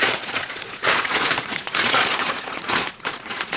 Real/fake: fake